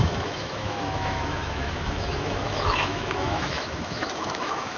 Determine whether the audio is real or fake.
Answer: fake